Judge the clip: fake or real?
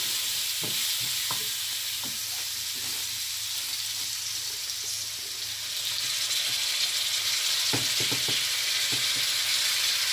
real